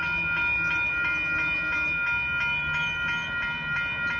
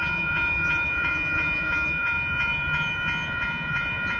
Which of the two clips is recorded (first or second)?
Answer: first